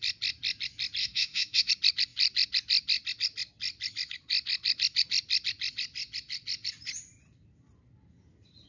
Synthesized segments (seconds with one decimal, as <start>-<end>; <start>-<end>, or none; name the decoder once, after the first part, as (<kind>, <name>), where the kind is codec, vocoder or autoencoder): 1.0-1.7 (autoencoder, DAC-VAE)